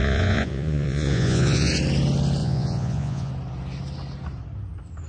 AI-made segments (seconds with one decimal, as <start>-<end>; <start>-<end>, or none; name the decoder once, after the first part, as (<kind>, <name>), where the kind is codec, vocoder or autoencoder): 0.0-1.7 (vocoder, Vocos); 2.4-3.3